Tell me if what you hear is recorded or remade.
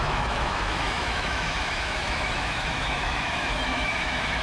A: remade